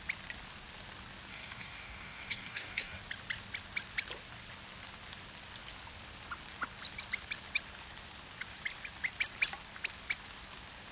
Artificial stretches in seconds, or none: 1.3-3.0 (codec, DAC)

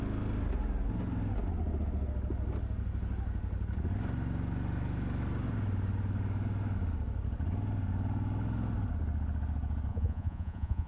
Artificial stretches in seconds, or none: 9.9-10.9 (vocoder, Vocos)

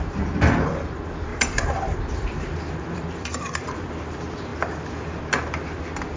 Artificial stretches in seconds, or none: 1.3-4.0 (vocoder, BigVGAN v2)

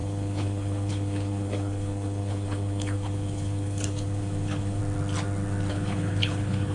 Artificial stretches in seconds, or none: 0.0-4.8 (codec, HILCodec); 5.7-6.7

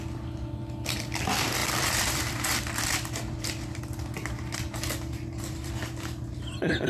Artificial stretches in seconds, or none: 1.6-5.7 (vocoder, BigVGAN v2)

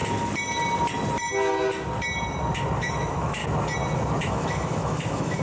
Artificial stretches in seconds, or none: 2.8-3.4 (autoencoder, DAC-VAE); 4.3-5.4